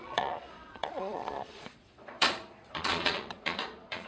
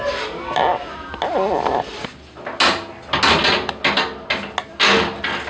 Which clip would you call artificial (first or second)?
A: first